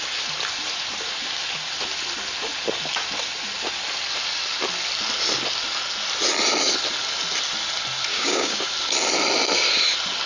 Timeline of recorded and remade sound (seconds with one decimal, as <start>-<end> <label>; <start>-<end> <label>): 0.0-8.1 recorded; 8.1-8.6 remade; 8.6-10.3 recorded